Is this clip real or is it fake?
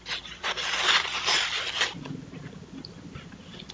real